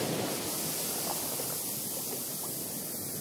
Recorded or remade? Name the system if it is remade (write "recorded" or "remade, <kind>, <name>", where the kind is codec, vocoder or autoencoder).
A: recorded